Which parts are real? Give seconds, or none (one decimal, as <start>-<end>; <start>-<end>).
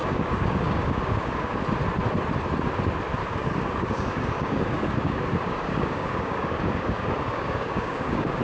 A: 1.6-3.2